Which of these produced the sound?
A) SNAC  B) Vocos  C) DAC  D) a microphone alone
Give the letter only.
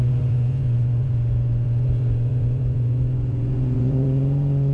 B